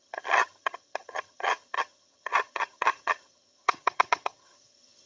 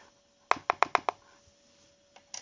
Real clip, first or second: second